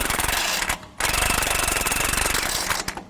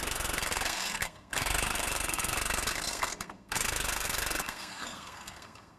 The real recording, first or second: first